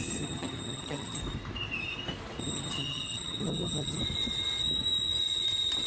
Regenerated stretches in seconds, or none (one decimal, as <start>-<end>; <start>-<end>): 0.0-1.2; 2.4-4.0